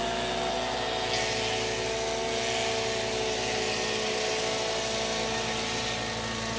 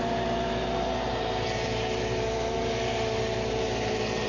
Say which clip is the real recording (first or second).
first